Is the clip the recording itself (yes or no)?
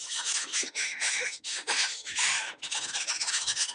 no